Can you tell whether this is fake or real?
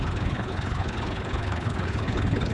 fake